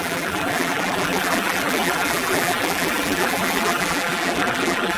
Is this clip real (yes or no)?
no